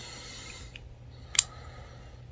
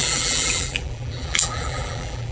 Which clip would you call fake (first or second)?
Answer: second